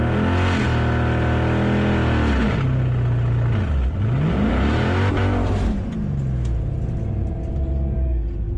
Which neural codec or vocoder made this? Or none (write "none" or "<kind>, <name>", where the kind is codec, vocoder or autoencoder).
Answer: none